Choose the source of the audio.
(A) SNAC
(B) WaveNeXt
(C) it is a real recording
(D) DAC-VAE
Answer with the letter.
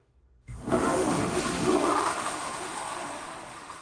D